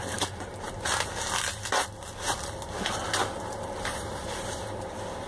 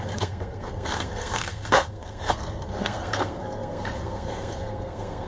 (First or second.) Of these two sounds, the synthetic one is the second